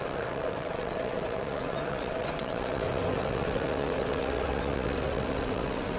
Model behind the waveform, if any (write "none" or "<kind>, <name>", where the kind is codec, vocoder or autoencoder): vocoder, WaveNeXt